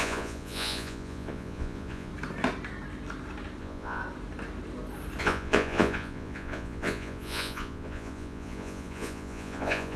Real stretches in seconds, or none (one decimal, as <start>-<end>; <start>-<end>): 2.1-3.6; 4.0-5.2